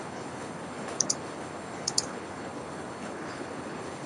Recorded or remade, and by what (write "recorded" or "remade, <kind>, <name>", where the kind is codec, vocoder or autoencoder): remade, codec, HILCodec